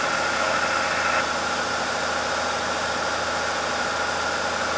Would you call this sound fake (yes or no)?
no